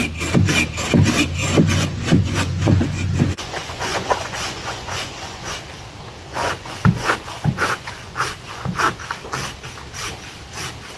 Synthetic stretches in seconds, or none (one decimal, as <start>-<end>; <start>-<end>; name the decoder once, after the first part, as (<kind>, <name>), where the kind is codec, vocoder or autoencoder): 1.4-5.6 (vocoder, Vocos); 6.3-8.8